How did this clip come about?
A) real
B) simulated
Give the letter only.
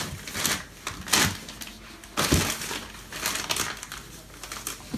A